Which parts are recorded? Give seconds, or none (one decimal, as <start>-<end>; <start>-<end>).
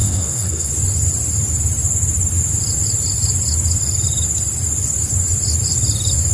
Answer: 0.7-6.3